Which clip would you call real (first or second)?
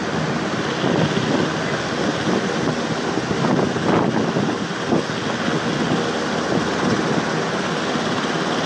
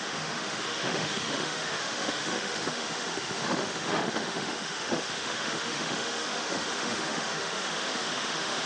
first